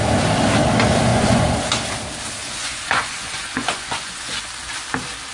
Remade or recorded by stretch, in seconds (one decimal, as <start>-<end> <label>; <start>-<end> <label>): 0.0-1.1 recorded; 1.1-1.6 remade; 1.6-2.4 recorded; 2.4-4.5 remade; 4.5-5.3 recorded